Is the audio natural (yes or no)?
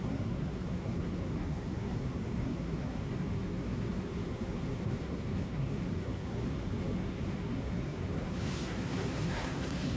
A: no